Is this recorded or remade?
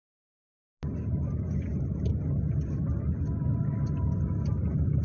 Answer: recorded